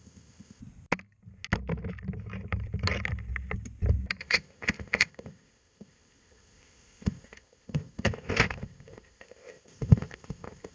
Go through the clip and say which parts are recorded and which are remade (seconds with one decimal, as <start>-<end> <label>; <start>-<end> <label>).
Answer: 0.0-0.6 remade; 0.6-4.2 recorded; 4.2-10.7 remade